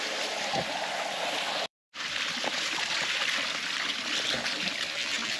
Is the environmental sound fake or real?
fake